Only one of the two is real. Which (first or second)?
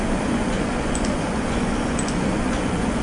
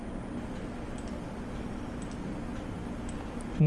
second